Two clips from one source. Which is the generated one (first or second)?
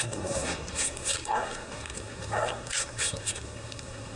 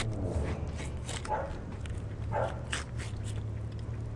first